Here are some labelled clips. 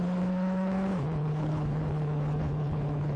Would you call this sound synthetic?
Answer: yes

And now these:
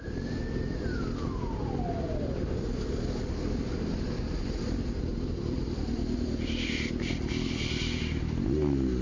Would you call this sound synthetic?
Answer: no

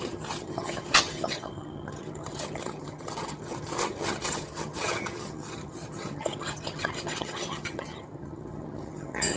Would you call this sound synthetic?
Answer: yes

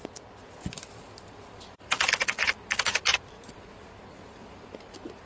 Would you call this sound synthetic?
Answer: no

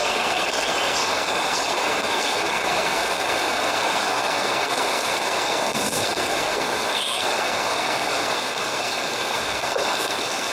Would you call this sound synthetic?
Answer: yes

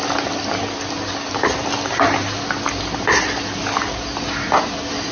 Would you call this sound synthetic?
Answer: no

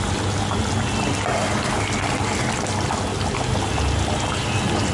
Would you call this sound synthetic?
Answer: no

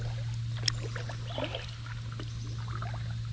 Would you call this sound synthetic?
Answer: no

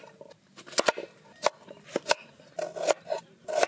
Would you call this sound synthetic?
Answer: no